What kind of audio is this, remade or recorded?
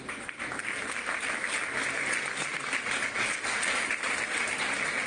recorded